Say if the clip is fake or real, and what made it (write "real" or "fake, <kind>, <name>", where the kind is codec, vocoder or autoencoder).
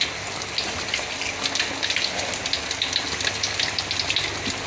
real